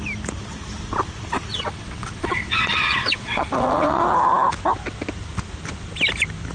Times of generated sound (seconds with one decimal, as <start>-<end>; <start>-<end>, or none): 1.5-4.0